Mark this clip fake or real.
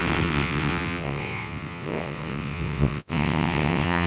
fake